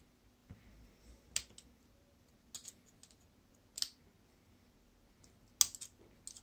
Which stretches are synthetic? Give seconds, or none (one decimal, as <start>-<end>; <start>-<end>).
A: 0.4-1.1